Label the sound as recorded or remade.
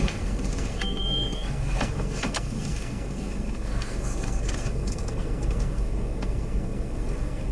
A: remade